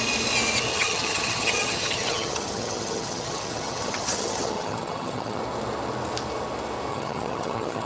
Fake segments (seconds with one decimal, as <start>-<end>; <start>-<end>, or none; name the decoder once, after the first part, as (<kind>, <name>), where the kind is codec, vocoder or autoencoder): 0.7-5.4 (vocoder, HiFi-GAN); 6.9-7.9